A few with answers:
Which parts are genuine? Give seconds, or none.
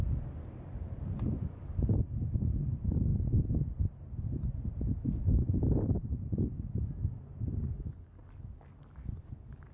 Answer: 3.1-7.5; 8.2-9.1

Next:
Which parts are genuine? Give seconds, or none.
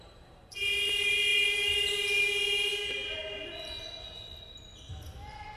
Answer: 2.7-5.6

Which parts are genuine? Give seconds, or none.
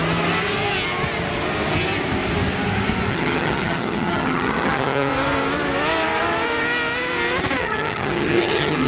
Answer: 0.0-3.1; 5.1-7.6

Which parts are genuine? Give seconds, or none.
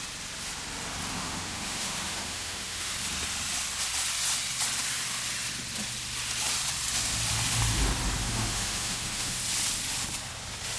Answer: 0.0-1.1; 2.9-8.2; 9.4-10.8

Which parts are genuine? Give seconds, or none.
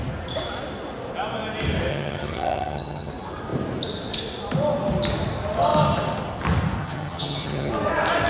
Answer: 0.0-1.9; 3.1-6.8; 7.7-8.3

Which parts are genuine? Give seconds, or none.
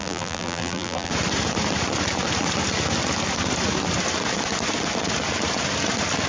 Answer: 1.1-6.3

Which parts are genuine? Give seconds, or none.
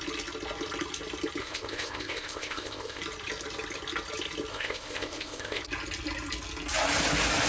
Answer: 0.0-1.4; 3.0-4.5; 5.6-7.5